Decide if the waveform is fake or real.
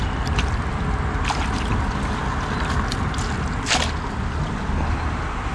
real